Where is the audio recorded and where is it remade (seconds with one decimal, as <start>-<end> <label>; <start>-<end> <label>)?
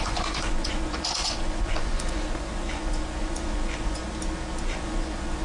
0.0-4.0 remade; 4.0-4.6 recorded; 4.6-5.4 remade